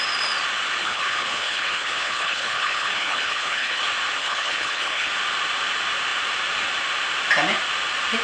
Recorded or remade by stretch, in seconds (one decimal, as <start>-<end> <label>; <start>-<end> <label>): 0.0-0.8 recorded; 0.8-3.8 remade; 3.8-4.2 recorded; 4.2-5.1 remade; 5.1-8.2 recorded